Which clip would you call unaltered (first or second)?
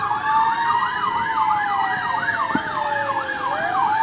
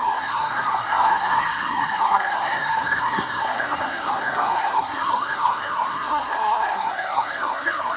first